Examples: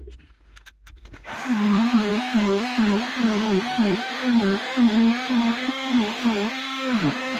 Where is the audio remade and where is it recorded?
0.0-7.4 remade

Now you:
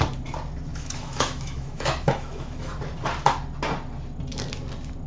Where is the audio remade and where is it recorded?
0.0-0.7 recorded; 0.7-2.8 remade; 2.8-5.1 recorded

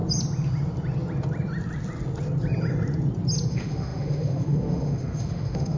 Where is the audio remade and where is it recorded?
0.0-3.5 recorded; 3.5-5.8 remade

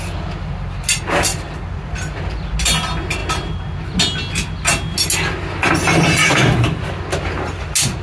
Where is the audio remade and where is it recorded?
0.0-6.2 recorded; 6.2-6.8 remade; 6.8-8.0 recorded

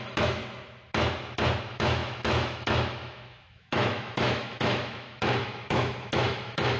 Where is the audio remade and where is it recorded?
0.0-0.4 remade; 0.4-1.6 recorded; 1.6-6.8 remade

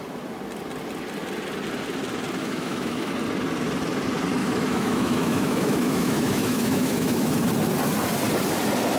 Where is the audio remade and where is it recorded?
0.0-2.4 recorded; 2.4-3.1 remade; 3.1-4.4 recorded; 4.4-7.3 remade; 7.3-9.0 recorded

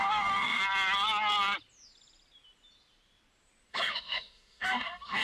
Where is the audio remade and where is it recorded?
0.0-0.6 remade; 0.6-3.7 recorded; 3.7-5.2 remade

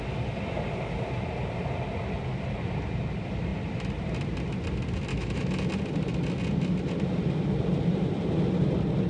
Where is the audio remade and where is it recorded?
0.0-5.1 recorded; 5.1-5.6 remade; 5.6-9.1 recorded